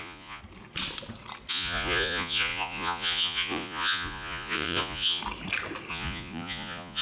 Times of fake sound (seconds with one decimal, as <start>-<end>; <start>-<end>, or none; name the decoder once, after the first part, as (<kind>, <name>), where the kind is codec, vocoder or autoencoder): 0.0-0.4 (vocoder, Vocos); 1.5-5.2; 5.9-7.0